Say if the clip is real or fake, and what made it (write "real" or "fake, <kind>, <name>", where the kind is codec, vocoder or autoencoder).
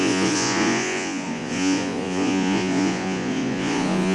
fake, vocoder, Vocos